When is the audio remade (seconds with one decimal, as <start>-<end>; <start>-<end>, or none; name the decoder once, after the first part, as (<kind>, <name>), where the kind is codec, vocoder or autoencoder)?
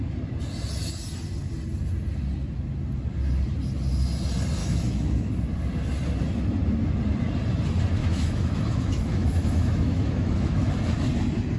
4.6-5.3 (autoencoder, DAC-VAE); 8.0-10.7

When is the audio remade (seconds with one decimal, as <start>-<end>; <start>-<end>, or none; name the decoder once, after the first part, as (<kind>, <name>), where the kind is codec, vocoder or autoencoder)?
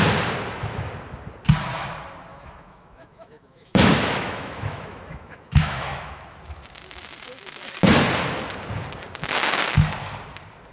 2.3-6.4 (autoencoder, DAC-VAE)